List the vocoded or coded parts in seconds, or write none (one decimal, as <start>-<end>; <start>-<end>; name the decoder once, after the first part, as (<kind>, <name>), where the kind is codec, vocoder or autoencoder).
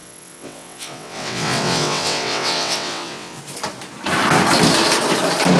0.0-3.4 (vocoder, WaveNeXt)